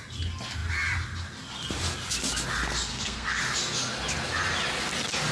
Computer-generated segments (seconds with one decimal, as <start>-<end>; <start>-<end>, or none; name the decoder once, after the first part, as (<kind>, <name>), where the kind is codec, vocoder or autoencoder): 2.9-3.4 (codec, SNAC)